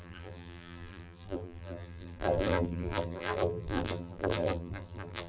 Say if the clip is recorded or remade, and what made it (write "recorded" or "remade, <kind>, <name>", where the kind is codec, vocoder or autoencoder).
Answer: remade, vocoder, BigVGAN v2